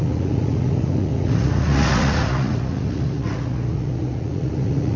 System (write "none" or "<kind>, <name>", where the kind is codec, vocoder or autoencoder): vocoder, Vocos